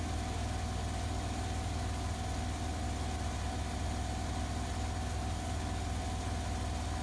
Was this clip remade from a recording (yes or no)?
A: no